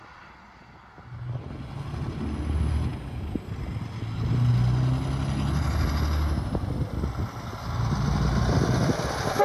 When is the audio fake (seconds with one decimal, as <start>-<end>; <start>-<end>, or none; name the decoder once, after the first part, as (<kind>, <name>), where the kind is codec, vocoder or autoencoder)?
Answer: none